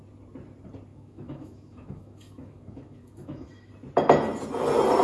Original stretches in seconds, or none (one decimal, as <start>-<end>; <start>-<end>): 0.0-0.9; 3.7-5.0